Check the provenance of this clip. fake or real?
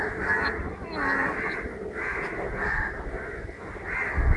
real